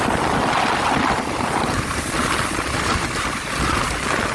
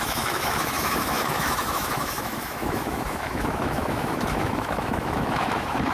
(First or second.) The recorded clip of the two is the first